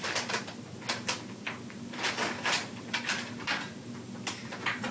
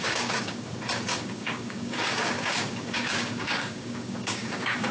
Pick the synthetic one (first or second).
second